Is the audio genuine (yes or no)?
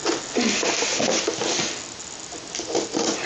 yes